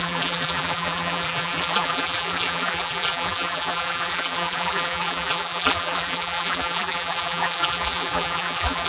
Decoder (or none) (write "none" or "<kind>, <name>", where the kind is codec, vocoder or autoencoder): vocoder, BigVGAN v2